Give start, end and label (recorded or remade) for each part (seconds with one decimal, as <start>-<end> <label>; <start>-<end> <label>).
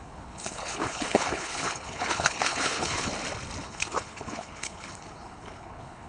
0.0-3.1 remade; 3.1-3.6 recorded; 3.6-6.1 remade